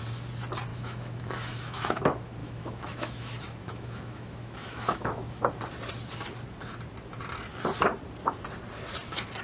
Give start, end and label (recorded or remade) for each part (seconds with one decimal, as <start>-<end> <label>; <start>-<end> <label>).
0.0-0.7 recorded; 0.7-2.0 remade; 2.0-2.4 recorded; 2.4-5.4 remade; 5.4-9.4 recorded